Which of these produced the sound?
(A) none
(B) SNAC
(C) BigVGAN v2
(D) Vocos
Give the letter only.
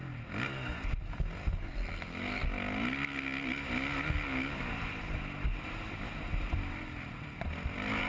A